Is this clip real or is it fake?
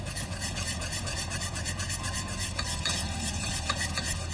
fake